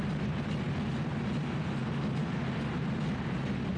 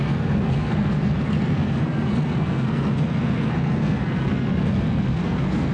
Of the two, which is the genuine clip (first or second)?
first